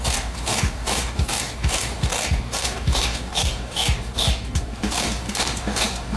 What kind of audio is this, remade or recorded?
remade